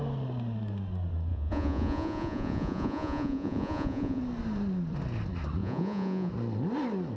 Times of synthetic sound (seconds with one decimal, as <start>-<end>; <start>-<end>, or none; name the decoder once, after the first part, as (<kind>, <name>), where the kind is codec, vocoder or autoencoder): 1.3-4.2 (vocoder, Vocos); 5.6-6.3